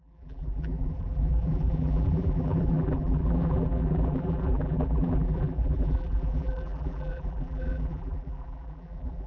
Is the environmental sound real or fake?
fake